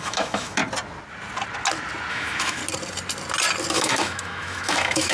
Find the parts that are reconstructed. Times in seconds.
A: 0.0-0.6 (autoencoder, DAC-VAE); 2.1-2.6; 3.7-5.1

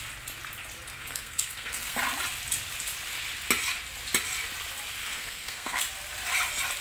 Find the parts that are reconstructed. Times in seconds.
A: 0.9-2.0 (codec, SNAC); 5.0-5.8

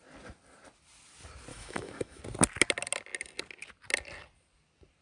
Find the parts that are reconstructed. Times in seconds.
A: 1.5-2.2 (autoencoder, DAC-VAE)

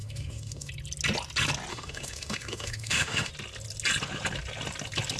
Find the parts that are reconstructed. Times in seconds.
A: 0.0-0.7 (autoencoder, DAC-VAE); 1.7-3.3

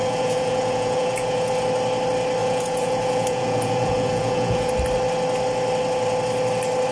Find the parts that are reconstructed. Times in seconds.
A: 0.0-1.5 (vocoder, Vocos); 2.4-4.7

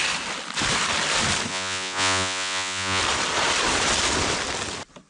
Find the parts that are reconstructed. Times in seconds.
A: 1.5-3.0 (vocoder, Vocos)

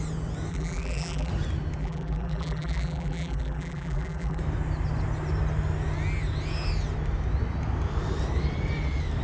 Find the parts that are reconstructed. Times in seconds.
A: 0.5-1.3 (vocoder, BigVGAN v2); 1.8-4.4

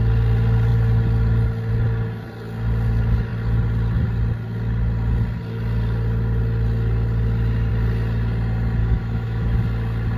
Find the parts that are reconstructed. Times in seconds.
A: 8.8-9.6 (autoencoder, DAC-VAE)